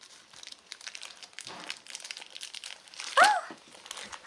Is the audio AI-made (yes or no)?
no